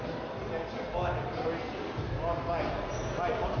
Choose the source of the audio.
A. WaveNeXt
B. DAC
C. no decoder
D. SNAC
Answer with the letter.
C